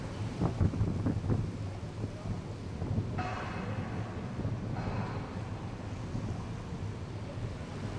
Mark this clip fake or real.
real